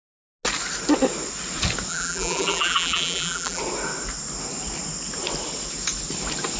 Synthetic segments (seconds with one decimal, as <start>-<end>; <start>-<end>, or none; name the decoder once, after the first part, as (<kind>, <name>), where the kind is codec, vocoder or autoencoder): 1.9-3.6 (vocoder, BigVGAN v2)